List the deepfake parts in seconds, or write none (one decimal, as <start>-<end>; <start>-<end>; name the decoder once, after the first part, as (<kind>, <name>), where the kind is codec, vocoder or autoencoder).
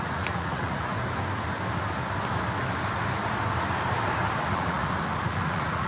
0.0-0.9 (vocoder, Vocos); 4.4-5.9